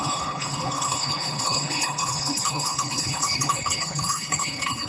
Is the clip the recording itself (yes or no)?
no